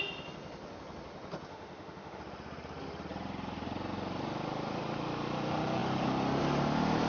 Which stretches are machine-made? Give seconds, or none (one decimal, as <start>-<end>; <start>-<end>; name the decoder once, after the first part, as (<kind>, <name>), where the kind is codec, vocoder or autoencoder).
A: 1.5-2.2 (autoencoder, DAC-VAE)